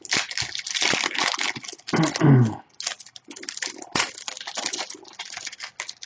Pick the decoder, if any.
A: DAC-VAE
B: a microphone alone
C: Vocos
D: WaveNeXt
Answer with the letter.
B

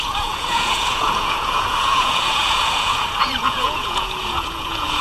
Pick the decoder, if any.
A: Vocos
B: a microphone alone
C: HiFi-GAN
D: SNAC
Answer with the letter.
A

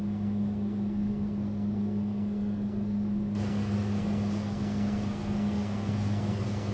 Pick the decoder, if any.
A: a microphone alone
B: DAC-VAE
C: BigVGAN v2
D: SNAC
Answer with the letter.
D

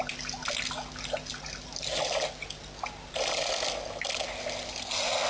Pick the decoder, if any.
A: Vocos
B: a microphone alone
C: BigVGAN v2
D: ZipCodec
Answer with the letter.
B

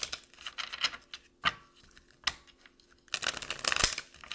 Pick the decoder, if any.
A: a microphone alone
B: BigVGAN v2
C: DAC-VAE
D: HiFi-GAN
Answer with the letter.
A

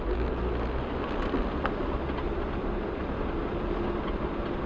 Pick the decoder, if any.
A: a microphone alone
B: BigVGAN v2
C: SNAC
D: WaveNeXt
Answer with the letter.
A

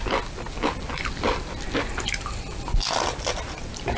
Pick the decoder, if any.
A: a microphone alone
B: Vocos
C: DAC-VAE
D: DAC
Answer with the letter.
A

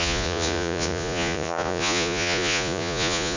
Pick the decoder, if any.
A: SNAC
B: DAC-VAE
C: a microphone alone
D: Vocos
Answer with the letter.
D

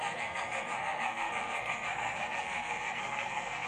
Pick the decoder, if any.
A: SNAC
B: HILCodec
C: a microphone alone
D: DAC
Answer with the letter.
A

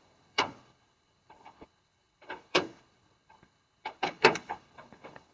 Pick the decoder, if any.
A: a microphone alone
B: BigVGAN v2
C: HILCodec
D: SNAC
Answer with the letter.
C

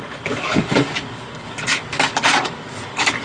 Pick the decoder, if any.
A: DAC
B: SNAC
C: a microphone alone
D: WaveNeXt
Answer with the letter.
A